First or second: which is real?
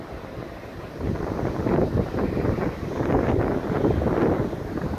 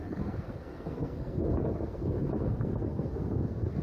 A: first